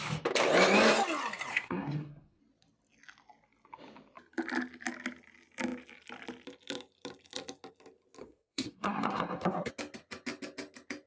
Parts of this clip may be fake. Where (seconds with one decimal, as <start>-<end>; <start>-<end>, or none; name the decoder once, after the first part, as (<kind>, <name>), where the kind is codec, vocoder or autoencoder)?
1.5-2.4 (codec, SNAC); 8.2-9.7